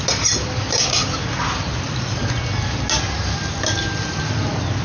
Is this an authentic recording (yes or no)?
yes